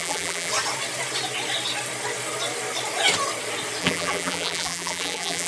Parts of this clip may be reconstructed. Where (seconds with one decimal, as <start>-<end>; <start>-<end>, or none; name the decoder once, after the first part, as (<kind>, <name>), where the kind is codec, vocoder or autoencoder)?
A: 0.0-0.5 (vocoder, BigVGAN v2); 3.8-5.5